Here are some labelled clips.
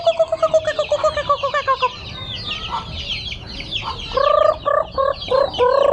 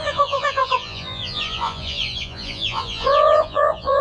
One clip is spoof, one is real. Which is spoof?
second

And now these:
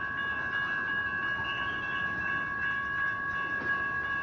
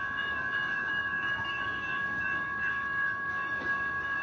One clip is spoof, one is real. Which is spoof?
second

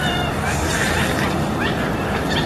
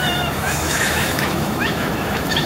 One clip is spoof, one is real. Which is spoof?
second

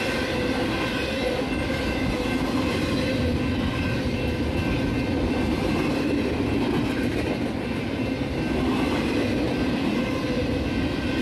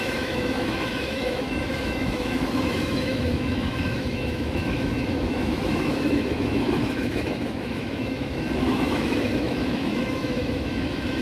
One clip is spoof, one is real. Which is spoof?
second